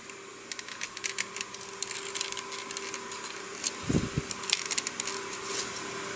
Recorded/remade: recorded